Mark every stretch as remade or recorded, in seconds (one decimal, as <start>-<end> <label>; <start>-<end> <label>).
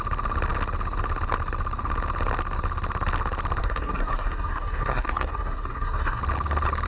0.0-3.6 recorded; 3.6-6.2 remade; 6.2-6.9 recorded